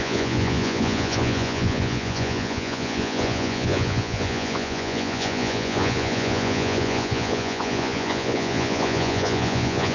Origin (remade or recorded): remade